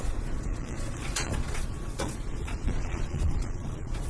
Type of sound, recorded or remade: remade